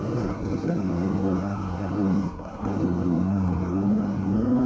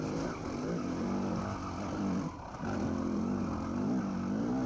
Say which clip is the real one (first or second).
second